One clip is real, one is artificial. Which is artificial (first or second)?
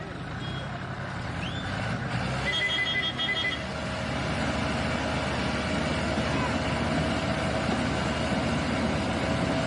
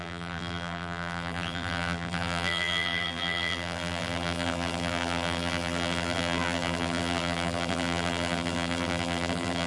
second